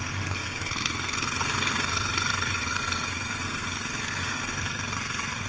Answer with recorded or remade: remade